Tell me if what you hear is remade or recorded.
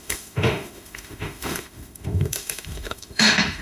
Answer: remade